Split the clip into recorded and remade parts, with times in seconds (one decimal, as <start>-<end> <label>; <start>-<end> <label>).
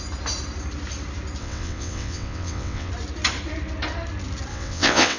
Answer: 0.0-1.4 recorded; 1.4-2.9 remade; 2.9-4.5 recorded; 4.5-5.2 remade